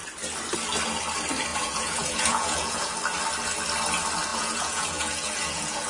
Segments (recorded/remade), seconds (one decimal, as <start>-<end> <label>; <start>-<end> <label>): 0.0-1.5 recorded; 1.5-2.9 remade; 2.9-4.3 recorded; 4.3-5.9 remade